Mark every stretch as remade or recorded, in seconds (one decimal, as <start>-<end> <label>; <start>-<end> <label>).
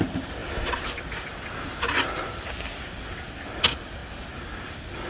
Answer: 0.0-5.1 recorded